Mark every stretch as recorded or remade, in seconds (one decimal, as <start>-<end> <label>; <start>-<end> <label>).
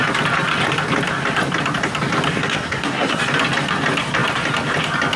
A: 0.0-2.4 recorded; 2.4-3.2 remade; 3.2-5.2 recorded